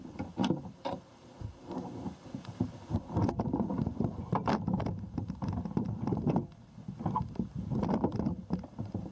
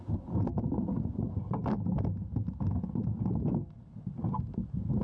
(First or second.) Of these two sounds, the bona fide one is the second